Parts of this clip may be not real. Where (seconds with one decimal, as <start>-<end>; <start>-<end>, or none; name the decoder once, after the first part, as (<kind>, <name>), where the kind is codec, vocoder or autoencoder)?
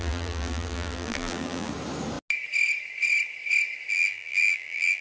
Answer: 0.0-1.7 (vocoder, BigVGAN v2); 3.9-5.0